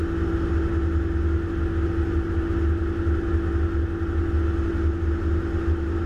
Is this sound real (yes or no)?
yes